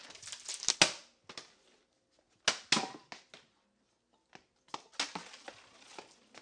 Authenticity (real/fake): real